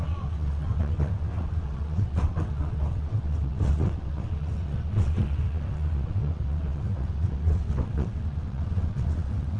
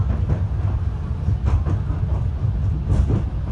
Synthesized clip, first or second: first